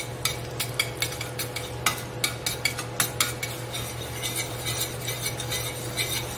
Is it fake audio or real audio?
real